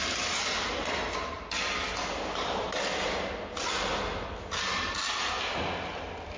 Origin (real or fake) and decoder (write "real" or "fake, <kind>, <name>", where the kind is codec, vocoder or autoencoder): real